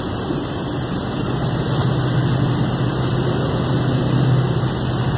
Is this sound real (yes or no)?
yes